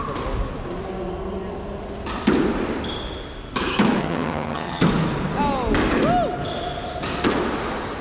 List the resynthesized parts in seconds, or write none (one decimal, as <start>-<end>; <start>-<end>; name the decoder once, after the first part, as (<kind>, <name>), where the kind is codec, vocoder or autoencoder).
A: 4.0-4.8 (vocoder, HiFi-GAN)